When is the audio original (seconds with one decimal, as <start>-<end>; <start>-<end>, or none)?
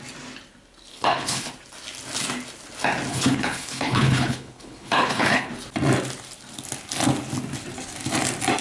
0.0-0.9; 1.5-3.1; 5.5-8.6